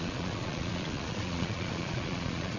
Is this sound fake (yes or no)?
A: yes